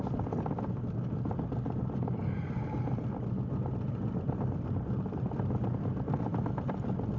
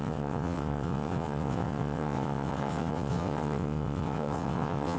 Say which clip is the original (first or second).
first